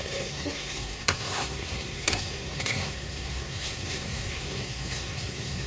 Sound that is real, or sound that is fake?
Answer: fake